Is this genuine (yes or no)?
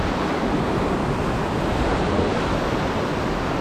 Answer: yes